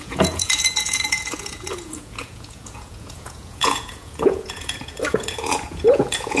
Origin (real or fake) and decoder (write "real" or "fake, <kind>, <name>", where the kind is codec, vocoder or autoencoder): fake, vocoder, Vocos